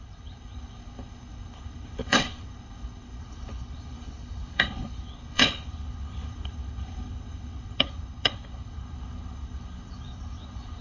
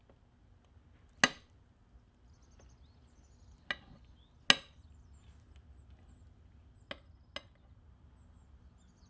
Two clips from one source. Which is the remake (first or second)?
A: first